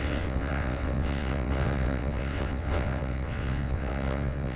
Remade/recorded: remade